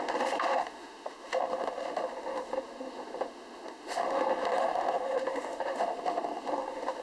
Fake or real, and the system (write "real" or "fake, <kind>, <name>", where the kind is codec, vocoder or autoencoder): fake, autoencoder, DAC-VAE